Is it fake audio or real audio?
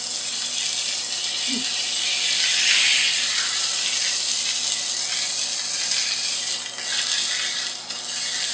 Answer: real